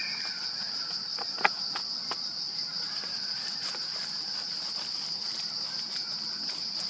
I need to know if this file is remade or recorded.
recorded